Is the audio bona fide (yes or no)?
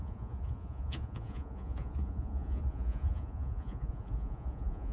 no